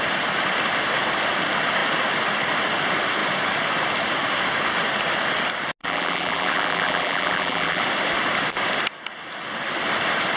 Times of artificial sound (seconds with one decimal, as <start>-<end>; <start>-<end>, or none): 5.8-7.8